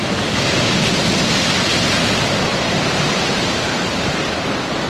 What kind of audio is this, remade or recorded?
recorded